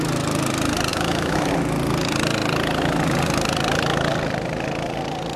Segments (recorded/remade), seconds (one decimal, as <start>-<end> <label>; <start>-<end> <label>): 0.0-0.9 recorded; 0.9-1.5 remade; 1.5-5.4 recorded